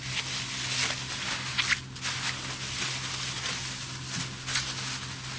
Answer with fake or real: real